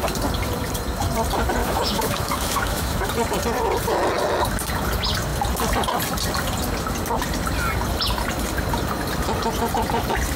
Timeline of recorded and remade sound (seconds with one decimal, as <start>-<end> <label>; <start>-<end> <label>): 0.0-1.6 recorded; 1.6-3.1 remade; 3.1-10.4 recorded